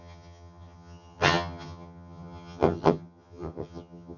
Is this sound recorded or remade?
remade